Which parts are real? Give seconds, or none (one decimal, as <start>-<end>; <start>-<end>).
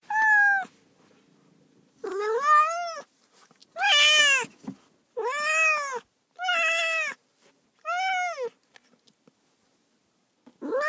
0.0-10.9